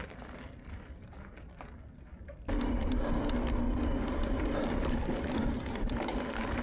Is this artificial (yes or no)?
no